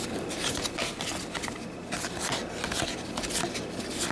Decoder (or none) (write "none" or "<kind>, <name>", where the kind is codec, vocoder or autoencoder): none